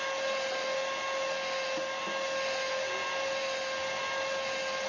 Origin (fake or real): real